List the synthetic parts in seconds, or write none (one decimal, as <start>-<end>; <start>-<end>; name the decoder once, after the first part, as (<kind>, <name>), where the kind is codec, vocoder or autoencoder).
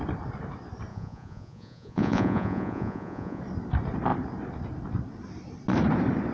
0.9-3.4 (vocoder, Vocos)